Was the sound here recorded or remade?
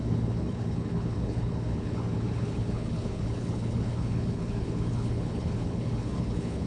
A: remade